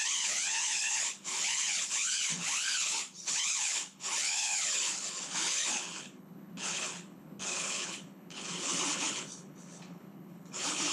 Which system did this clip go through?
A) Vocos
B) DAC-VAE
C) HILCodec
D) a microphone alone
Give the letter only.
C